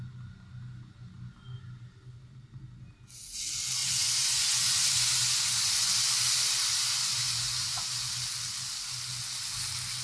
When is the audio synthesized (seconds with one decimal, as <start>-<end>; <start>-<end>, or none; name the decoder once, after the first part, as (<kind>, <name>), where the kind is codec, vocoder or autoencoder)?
3.8-5.7 (vocoder, Vocos); 7.0-7.8